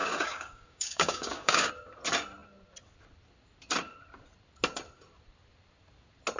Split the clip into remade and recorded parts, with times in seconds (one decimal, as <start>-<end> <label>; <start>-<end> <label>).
0.0-1.7 remade; 1.7-6.4 recorded